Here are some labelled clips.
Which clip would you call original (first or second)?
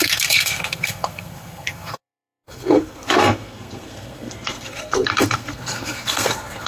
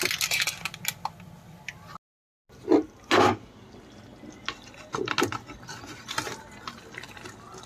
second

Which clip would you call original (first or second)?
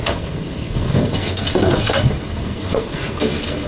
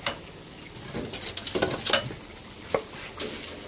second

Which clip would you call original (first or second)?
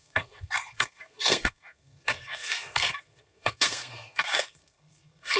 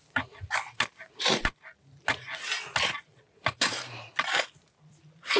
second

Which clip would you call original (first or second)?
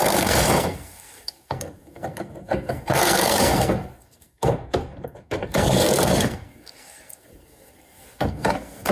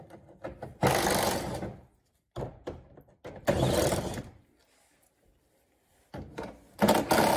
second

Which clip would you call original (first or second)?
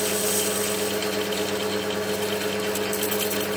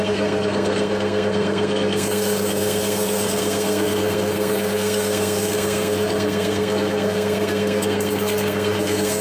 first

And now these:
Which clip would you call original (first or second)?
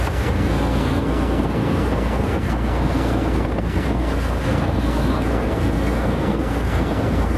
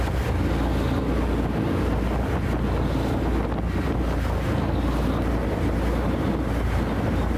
second